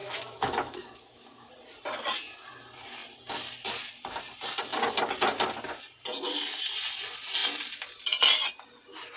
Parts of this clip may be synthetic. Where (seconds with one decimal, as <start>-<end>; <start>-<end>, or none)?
0.0-1.5